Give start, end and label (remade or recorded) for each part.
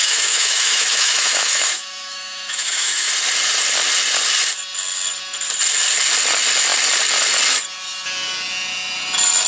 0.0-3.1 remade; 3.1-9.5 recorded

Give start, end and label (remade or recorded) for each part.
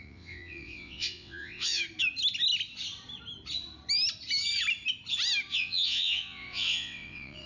0.0-1.8 remade; 1.8-5.5 recorded; 5.5-7.5 remade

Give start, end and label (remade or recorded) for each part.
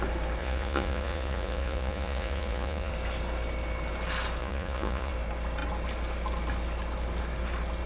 0.0-0.4 recorded; 0.4-2.9 remade; 2.9-4.4 recorded; 4.4-5.1 remade; 5.1-7.9 recorded